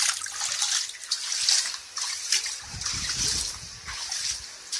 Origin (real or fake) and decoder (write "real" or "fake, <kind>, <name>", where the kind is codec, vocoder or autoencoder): real